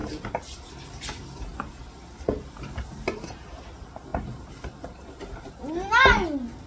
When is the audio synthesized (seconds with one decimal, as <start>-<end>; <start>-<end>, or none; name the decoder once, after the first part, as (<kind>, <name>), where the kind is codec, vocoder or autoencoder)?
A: 4.1-5.5 (vocoder, BigVGAN v2)